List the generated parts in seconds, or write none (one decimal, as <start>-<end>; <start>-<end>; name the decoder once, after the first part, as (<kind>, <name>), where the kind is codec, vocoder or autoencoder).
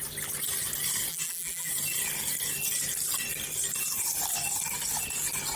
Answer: 1.1-1.7 (vocoder, BigVGAN v2)